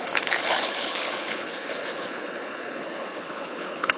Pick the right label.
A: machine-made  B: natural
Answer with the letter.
A